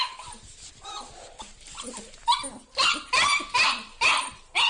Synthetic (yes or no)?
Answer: no